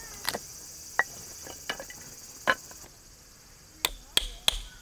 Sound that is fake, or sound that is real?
real